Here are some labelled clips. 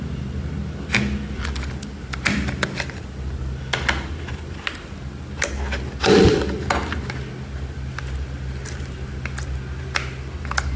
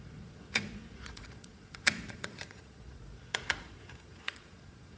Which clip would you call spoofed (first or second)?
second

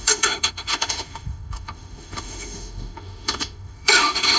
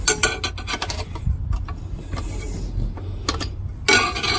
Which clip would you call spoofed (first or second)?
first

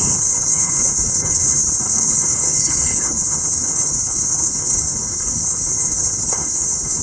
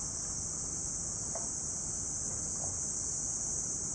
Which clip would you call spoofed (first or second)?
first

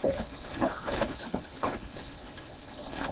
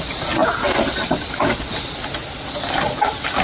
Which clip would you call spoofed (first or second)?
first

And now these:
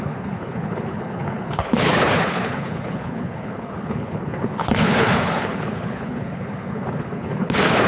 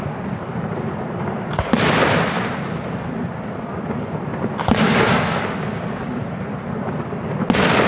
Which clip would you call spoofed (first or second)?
first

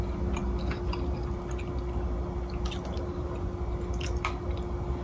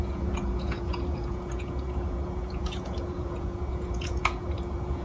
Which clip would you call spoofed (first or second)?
second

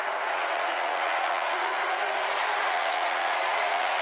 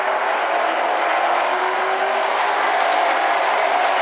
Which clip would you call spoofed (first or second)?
first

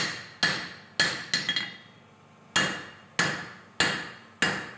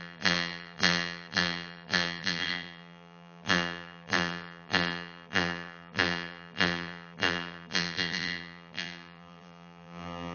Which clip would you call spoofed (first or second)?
second